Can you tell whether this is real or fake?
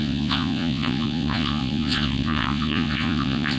fake